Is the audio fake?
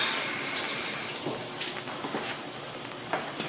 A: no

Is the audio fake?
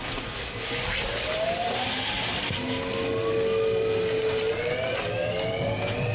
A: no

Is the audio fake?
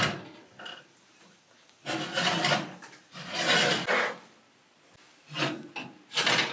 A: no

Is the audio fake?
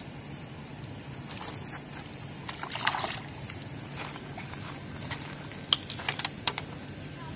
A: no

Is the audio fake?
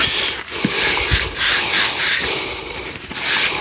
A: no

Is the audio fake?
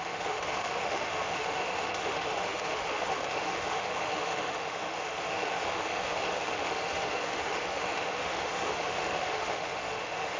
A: yes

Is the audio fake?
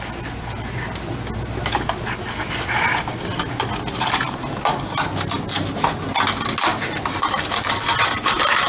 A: no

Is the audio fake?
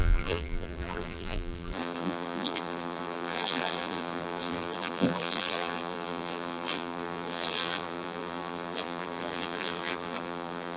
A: yes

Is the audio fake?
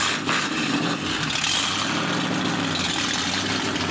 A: no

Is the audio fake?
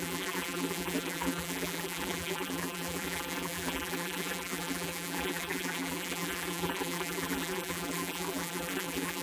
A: yes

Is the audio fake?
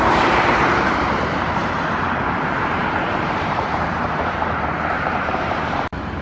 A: yes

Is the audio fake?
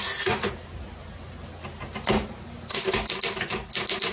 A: no